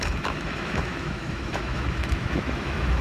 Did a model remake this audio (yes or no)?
yes